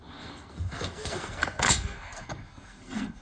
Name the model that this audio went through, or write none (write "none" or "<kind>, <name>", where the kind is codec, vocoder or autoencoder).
codec, SNAC